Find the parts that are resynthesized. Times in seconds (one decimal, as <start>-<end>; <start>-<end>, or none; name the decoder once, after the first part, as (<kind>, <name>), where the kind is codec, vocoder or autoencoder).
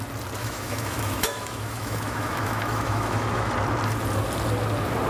0.4-3.5 (autoencoder, DAC-VAE)